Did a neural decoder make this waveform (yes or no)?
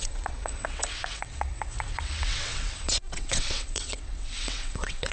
yes